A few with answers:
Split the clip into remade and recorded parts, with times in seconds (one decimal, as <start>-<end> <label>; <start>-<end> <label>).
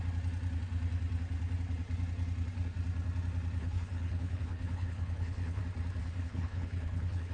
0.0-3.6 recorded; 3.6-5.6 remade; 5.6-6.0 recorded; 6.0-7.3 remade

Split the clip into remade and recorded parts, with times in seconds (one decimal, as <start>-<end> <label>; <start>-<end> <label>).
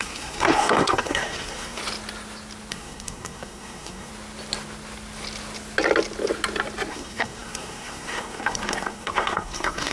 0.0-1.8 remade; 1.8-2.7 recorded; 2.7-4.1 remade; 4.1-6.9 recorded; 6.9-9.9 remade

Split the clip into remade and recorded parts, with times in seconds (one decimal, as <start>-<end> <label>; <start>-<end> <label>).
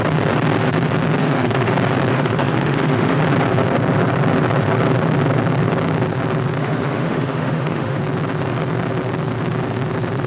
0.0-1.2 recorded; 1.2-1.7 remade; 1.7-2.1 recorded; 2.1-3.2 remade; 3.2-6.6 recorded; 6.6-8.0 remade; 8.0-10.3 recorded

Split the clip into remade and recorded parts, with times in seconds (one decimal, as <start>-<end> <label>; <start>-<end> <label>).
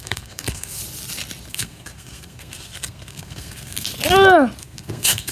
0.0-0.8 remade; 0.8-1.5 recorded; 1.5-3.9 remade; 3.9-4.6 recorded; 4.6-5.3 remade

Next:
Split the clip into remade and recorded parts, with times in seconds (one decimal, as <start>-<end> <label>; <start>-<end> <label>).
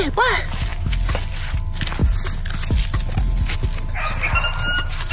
0.0-5.1 recorded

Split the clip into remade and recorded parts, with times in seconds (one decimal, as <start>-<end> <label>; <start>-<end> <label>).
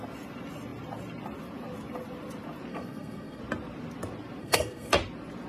0.0-2.7 recorded; 2.7-3.4 remade; 3.4-4.4 recorded; 4.4-4.9 remade; 4.9-5.5 recorded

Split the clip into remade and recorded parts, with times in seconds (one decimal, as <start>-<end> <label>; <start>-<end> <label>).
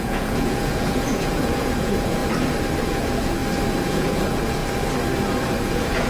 0.0-2.2 remade; 2.2-2.8 recorded; 2.8-3.4 remade; 3.4-3.9 recorded; 3.9-4.6 remade; 4.6-5.6 recorded; 5.6-6.1 remade